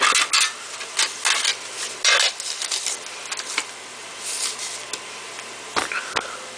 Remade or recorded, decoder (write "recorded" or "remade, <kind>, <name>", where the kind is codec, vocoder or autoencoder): recorded